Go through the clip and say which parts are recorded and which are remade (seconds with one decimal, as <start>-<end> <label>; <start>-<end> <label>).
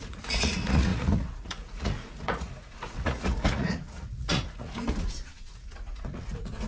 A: 0.0-6.7 remade